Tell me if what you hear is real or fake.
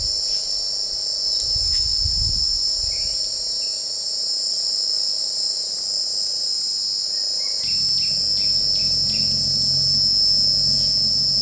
real